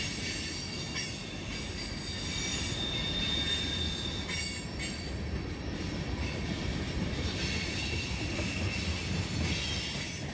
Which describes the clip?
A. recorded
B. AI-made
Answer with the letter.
A